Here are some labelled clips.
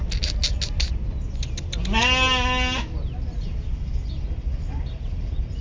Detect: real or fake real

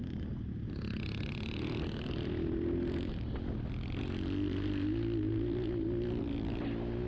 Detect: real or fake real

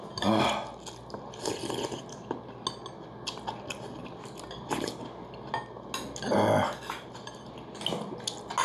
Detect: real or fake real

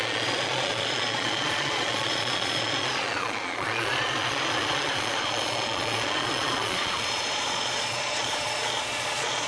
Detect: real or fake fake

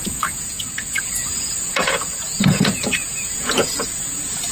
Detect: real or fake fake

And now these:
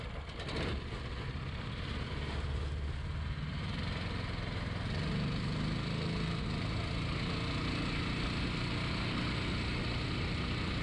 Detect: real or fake real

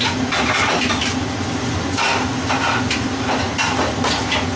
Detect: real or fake real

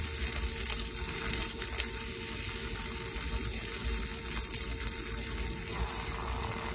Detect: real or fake real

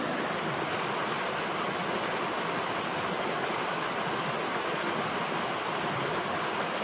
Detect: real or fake real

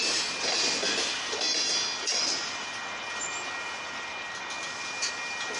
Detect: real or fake real